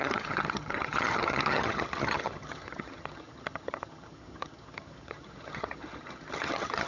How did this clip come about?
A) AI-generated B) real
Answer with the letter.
A